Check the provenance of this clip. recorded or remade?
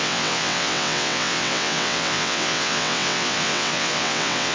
remade